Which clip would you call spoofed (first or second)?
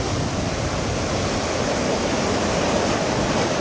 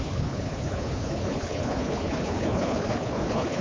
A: second